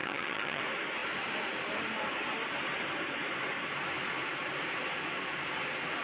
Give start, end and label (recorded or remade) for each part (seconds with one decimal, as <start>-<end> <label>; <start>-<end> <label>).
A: 0.0-0.6 remade; 0.6-6.0 recorded